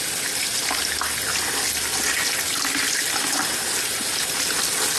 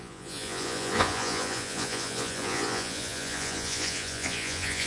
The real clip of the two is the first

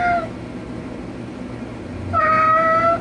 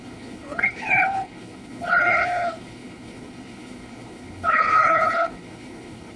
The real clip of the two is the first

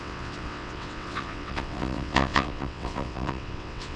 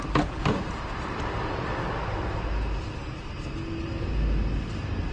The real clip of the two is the second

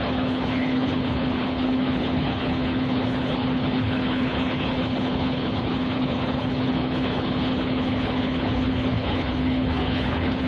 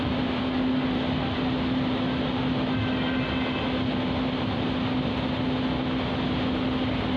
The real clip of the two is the second